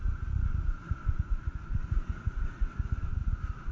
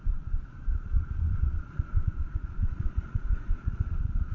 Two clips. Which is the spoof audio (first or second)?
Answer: second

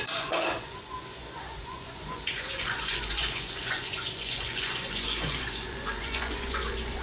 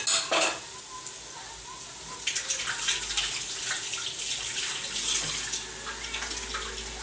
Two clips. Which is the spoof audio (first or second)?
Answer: first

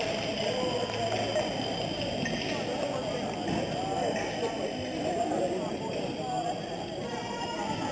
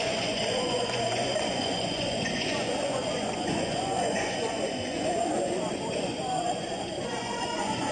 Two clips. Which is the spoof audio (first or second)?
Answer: second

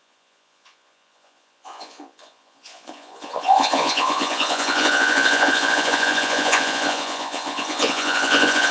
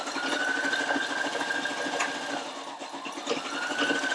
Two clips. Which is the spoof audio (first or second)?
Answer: first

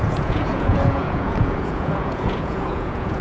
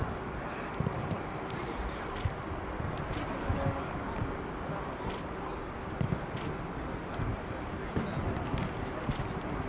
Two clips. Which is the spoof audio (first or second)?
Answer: first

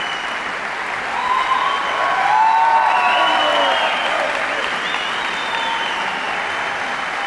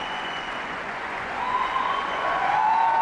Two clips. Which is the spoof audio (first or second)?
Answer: second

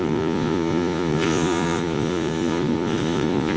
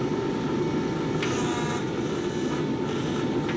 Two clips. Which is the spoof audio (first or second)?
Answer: first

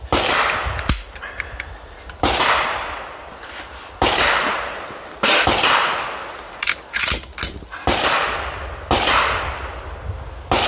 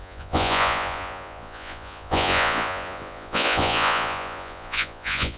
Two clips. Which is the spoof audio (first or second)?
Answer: second